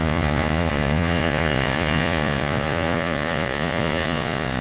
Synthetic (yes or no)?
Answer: yes